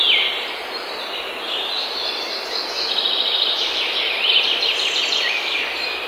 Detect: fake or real real